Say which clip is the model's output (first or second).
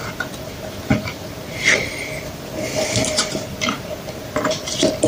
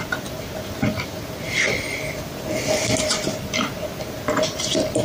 first